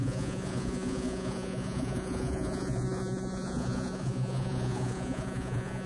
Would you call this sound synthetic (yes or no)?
yes